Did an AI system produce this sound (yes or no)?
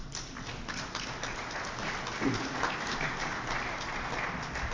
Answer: no